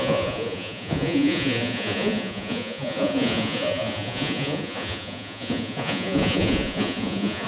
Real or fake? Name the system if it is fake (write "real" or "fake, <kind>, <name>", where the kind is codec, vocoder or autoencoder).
fake, vocoder, Vocos